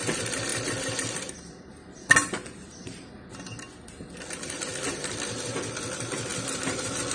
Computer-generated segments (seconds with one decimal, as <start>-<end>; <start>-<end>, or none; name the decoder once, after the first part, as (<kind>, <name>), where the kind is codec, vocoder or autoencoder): 0.5-3.1 (vocoder, BigVGAN v2); 6.3-7.1